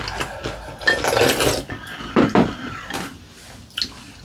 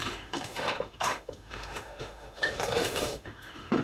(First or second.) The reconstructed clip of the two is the second